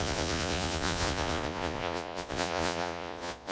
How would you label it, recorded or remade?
remade